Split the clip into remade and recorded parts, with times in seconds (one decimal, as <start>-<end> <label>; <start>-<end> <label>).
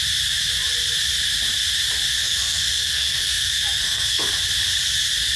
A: 0.0-2.2 recorded; 2.2-4.3 remade; 4.3-5.4 recorded